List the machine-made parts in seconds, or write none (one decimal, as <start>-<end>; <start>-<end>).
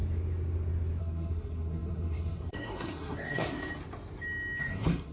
1.0-3.6; 4.6-5.1